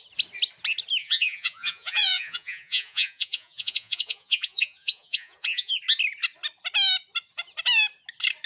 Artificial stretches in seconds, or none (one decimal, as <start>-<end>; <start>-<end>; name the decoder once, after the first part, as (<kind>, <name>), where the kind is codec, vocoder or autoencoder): 1.0-5.8 (vocoder, Vocos)